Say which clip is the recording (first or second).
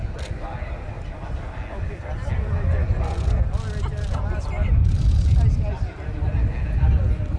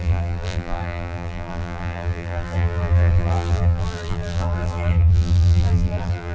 first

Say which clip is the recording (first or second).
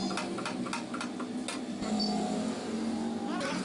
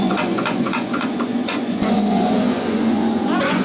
first